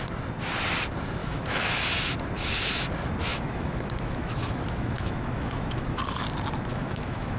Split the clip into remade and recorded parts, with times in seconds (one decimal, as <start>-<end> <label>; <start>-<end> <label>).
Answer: 0.0-1.2 recorded; 1.2-1.7 remade; 1.7-3.3 recorded; 3.3-6.0 remade; 6.0-6.7 recorded; 6.7-7.4 remade